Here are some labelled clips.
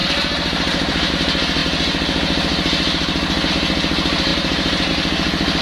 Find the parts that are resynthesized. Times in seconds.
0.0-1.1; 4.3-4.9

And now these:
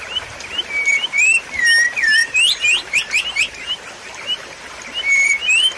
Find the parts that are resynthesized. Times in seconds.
2.2-5.8

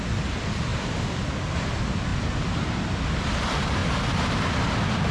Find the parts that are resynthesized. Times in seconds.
3.8-5.1

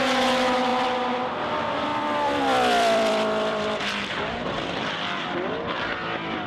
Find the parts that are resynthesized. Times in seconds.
0.7-1.5; 1.9-4.9